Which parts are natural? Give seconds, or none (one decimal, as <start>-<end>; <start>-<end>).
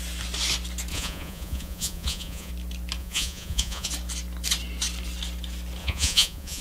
0.0-0.9; 2.5-3.0; 3.9-5.8